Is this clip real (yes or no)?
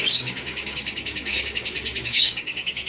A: no